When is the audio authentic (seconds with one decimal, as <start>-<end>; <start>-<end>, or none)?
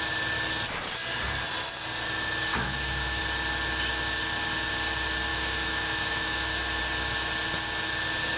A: 0.0-2.5; 3.2-5.3; 6.8-8.4